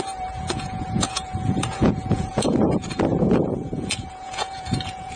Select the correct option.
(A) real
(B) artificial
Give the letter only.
B